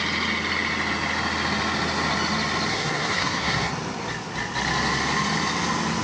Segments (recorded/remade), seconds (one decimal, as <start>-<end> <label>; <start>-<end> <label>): 0.0-2.7 recorded; 2.7-3.7 remade; 3.7-6.0 recorded

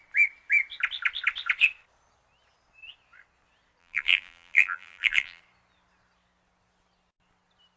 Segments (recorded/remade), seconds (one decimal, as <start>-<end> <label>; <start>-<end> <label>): 0.0-3.8 recorded; 3.8-5.4 remade; 5.4-7.8 recorded

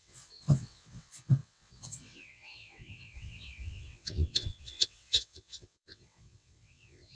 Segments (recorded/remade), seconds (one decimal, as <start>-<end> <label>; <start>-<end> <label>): 0.0-7.1 remade